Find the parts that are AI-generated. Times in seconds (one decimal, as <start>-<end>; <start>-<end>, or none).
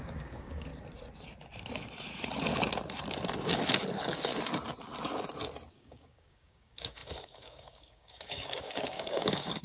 0.0-0.7; 5.7-9.6